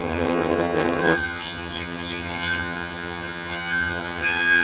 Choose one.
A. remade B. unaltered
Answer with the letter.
A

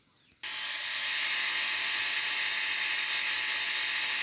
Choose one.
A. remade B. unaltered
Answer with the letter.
B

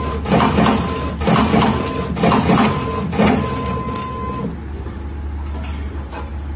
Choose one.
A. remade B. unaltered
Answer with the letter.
B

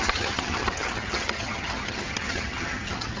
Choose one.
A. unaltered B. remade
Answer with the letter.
B